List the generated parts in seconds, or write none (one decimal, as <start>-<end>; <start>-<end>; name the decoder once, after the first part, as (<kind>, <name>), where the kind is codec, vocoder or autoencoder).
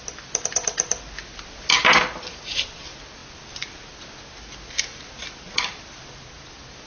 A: none